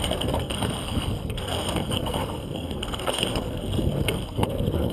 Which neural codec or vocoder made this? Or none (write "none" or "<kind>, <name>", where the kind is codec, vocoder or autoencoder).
codec, SNAC